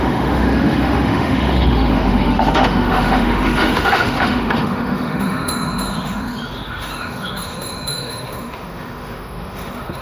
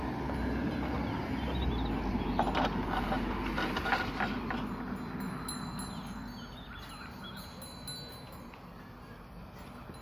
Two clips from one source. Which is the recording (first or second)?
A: second